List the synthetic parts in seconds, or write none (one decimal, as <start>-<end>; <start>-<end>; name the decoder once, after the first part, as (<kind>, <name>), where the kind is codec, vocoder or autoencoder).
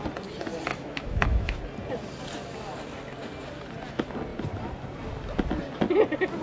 0.7-1.6 (autoencoder, DAC-VAE)